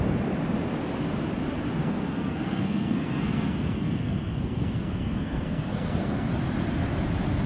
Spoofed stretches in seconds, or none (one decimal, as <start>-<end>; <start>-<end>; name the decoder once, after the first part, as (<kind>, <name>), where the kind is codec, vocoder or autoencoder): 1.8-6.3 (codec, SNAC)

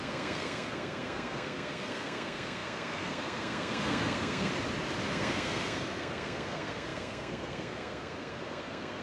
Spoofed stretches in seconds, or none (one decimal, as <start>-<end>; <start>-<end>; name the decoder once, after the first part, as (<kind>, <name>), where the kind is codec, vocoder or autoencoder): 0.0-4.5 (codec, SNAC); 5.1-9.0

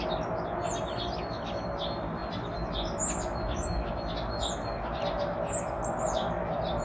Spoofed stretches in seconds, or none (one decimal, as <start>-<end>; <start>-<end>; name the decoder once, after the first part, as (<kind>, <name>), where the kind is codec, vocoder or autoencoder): none